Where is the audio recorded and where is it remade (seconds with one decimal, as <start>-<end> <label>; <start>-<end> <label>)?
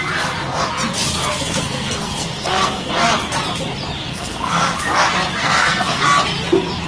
0.0-1.2 recorded; 1.2-2.9 remade; 2.9-4.1 recorded; 4.1-4.8 remade; 4.8-5.4 recorded; 5.4-6.0 remade; 6.0-6.9 recorded